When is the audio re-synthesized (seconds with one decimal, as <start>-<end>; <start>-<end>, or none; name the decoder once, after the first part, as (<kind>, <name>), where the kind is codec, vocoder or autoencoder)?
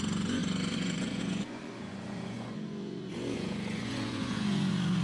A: 0.0-5.0 (vocoder, Vocos)